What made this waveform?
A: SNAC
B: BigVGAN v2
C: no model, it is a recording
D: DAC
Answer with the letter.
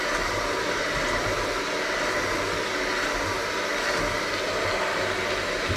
C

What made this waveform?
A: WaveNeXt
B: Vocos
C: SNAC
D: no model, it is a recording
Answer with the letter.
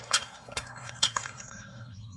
C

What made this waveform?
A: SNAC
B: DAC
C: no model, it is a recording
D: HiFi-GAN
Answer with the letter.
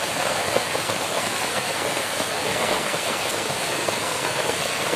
A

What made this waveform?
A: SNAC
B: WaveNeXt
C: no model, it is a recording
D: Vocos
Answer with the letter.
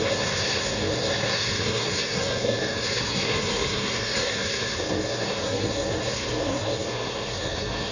A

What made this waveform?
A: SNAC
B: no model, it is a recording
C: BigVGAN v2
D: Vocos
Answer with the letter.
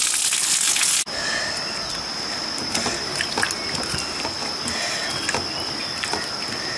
B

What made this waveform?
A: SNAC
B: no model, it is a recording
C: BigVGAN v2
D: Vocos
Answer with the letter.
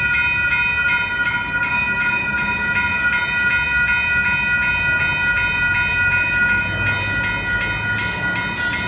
B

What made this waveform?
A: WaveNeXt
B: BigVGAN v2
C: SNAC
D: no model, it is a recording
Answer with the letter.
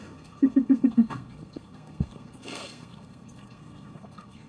C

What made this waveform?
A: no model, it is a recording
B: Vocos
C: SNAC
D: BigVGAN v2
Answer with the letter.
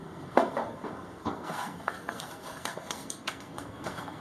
C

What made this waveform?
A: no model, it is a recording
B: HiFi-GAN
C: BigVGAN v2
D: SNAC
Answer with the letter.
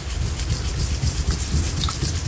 A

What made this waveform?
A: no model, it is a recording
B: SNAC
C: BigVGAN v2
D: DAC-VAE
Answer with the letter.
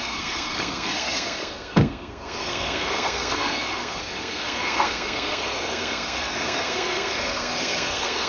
B